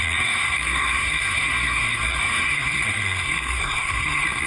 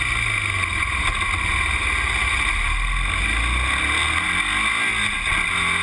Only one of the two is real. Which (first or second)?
second